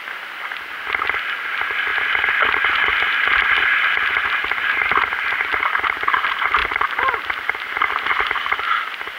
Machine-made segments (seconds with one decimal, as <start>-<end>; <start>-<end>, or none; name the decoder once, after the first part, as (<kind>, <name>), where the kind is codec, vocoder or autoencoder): none